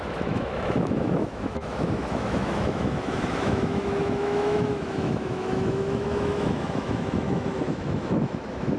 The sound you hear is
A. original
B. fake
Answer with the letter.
B